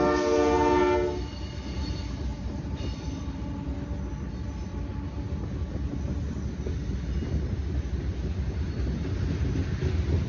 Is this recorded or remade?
recorded